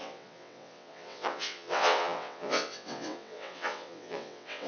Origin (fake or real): fake